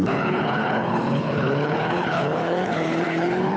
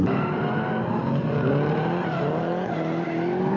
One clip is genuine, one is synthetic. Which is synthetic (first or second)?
first